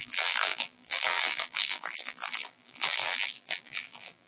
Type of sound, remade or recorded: remade